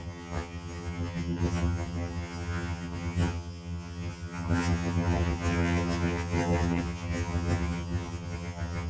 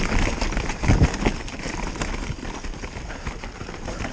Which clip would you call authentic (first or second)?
second